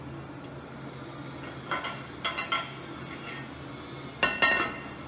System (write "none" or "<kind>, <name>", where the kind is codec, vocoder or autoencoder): none